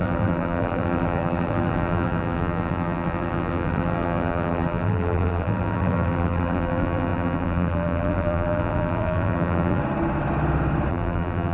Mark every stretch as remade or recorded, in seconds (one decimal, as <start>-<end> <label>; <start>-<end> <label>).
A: 0.0-9.8 remade; 9.8-10.9 recorded; 10.9-11.5 remade